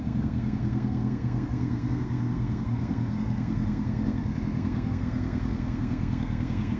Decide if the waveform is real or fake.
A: fake